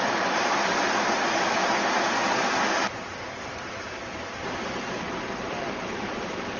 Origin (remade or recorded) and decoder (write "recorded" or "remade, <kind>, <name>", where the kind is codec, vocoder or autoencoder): remade, vocoder, BigVGAN v2